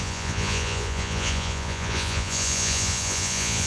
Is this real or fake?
fake